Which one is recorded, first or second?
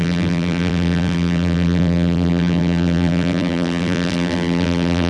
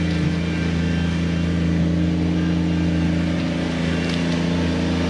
second